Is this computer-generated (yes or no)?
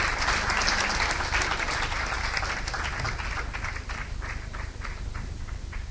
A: no